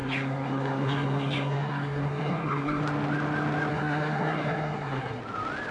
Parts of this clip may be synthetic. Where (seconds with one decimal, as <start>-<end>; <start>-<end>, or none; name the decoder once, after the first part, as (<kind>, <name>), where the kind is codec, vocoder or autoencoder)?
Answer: 0.0-2.8 (codec, SNAC); 3.7-5.2